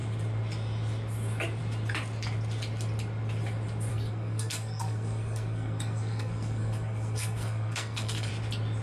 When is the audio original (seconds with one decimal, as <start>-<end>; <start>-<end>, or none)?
0.0-3.9; 8.3-8.8